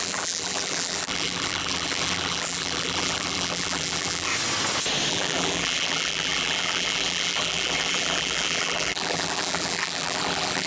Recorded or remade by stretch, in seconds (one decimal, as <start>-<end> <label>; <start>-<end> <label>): 0.0-4.3 remade; 4.3-5.1 recorded; 5.1-10.7 remade